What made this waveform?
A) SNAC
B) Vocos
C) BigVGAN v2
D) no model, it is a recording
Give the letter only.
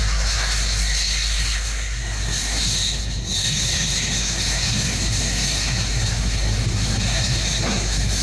A